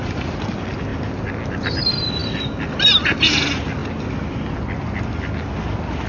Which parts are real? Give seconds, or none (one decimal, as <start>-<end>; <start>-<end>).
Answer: 0.0-6.1